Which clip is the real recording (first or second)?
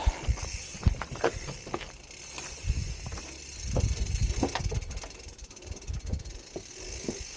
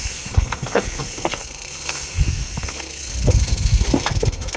first